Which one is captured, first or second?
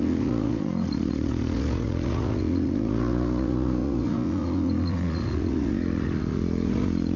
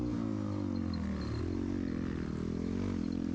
second